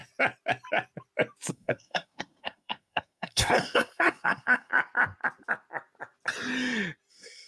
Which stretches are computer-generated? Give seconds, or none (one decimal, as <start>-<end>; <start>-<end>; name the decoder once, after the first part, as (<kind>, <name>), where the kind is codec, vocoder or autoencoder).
1.5-4.7 (codec, SNAC); 7.1-7.5